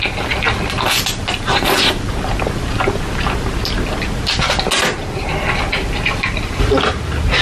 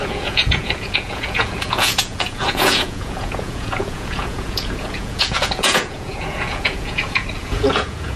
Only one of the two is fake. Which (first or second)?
second